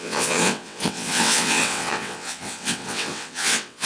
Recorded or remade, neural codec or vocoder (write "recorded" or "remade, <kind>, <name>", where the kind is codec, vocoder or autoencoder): remade, vocoder, WaveNeXt